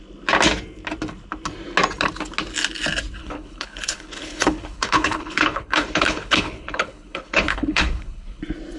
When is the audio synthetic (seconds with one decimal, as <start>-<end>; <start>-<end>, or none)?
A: 3.2-8.4